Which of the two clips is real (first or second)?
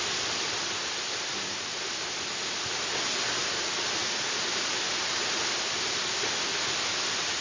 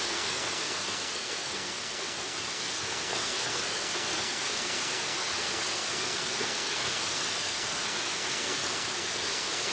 first